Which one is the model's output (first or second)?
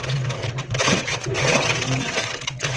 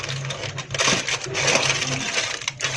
first